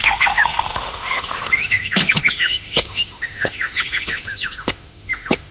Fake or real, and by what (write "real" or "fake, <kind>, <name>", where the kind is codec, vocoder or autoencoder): fake, autoencoder, DAC-VAE